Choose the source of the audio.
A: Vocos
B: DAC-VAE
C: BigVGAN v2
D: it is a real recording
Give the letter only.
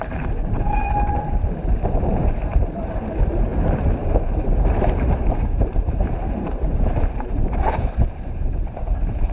C